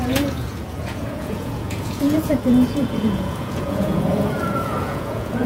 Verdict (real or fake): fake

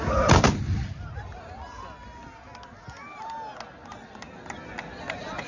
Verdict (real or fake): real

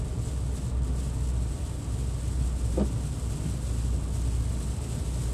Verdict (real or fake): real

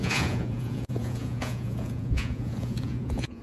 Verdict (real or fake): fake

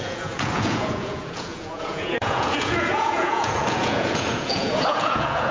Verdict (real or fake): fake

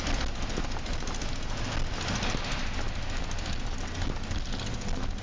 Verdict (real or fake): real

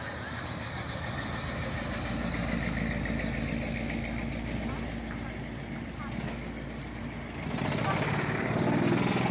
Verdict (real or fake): real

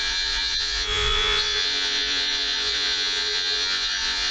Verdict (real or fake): fake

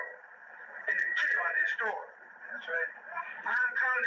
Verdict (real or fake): fake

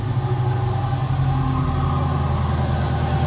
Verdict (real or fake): real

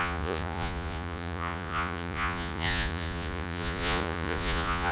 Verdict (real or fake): fake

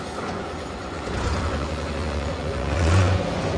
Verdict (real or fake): fake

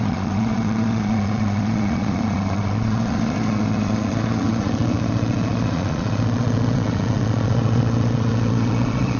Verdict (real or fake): fake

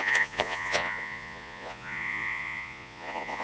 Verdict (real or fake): fake